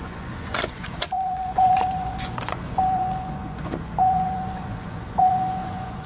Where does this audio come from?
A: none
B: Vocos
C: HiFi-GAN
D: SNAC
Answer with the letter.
B